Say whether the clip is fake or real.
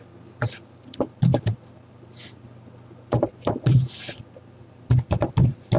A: real